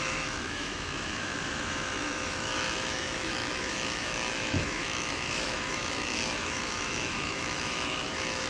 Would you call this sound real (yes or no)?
no